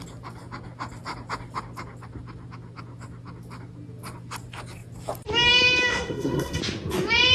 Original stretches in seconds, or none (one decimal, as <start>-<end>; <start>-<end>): 0.0-5.9; 6.6-7.3